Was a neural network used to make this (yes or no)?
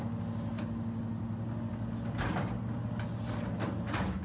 no